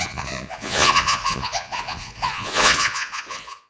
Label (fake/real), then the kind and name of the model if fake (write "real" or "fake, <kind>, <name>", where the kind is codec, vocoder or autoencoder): fake, vocoder, Vocos